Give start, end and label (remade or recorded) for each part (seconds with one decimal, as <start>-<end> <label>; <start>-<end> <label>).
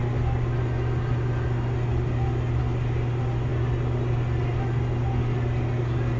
0.0-6.2 recorded